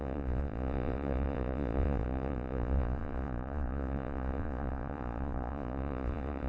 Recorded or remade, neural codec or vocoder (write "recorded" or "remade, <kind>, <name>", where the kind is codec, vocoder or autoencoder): remade, vocoder, Vocos